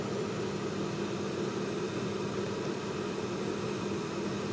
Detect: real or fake real